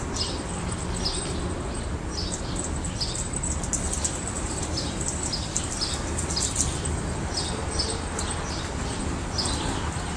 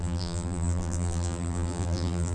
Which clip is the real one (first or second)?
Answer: first